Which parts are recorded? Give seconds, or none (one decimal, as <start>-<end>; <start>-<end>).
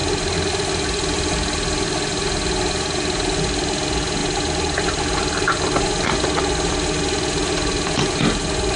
0.0-8.8